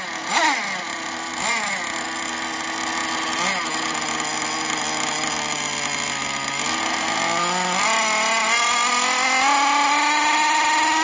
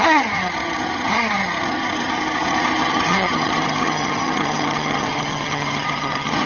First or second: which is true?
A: first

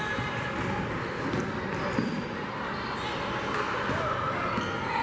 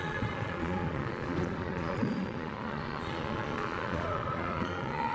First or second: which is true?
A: first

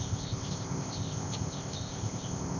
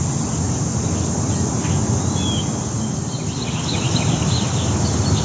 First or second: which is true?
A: second